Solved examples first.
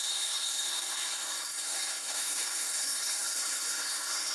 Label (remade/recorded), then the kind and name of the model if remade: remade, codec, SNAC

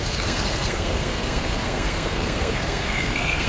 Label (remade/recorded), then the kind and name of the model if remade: remade, codec, SNAC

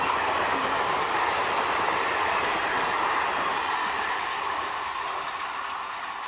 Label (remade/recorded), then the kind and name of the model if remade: recorded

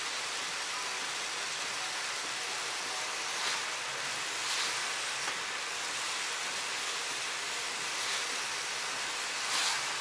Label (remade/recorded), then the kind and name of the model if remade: recorded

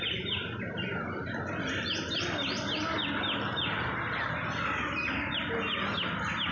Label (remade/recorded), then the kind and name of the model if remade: recorded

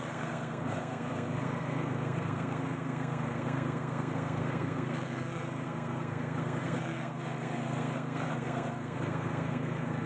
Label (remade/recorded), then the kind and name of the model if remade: remade, codec, SNAC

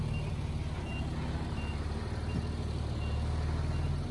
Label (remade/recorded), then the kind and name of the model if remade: recorded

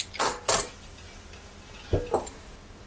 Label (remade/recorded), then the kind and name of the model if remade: recorded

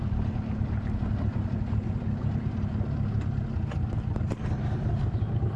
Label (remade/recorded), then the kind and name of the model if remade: recorded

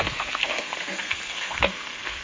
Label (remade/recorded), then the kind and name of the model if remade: remade, codec, SNAC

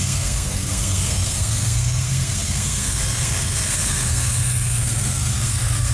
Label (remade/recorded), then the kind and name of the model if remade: remade, codec, SNAC